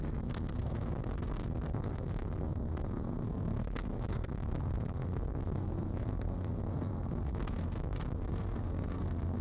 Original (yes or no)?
no